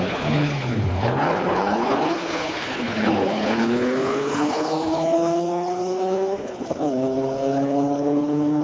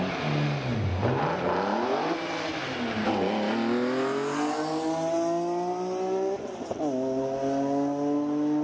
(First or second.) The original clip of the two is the second